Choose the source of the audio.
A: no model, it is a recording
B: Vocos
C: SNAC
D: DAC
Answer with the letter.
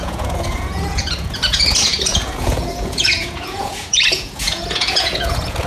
B